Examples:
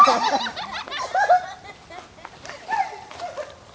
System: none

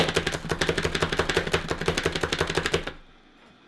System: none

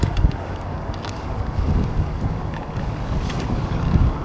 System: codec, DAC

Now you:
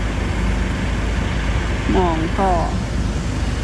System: none